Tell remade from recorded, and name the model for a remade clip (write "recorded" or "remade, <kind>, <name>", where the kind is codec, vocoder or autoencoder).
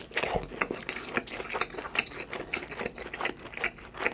recorded